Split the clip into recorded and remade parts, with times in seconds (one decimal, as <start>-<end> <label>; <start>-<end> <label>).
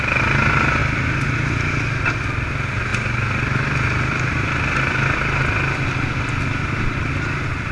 0.0-7.7 recorded